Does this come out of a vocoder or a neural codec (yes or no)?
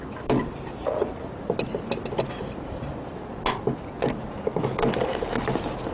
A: no